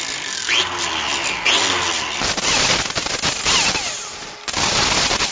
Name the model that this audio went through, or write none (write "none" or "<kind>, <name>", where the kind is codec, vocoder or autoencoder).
none